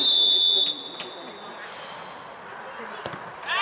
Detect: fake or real real